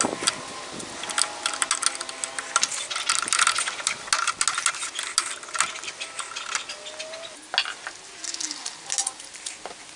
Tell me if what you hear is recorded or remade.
recorded